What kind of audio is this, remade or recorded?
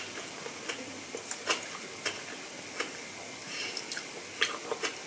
recorded